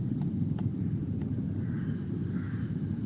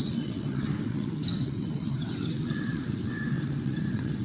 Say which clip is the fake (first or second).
second